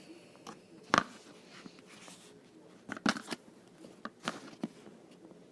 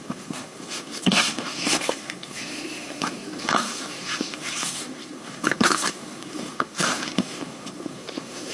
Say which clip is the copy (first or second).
second